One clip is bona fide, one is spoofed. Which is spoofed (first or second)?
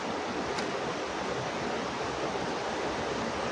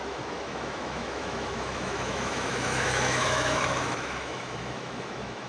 second